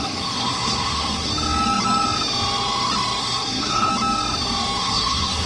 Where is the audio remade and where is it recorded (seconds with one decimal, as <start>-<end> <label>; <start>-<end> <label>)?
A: 0.0-1.3 remade; 1.3-3.2 recorded; 3.2-3.9 remade; 3.9-4.8 recorded; 4.8-5.5 remade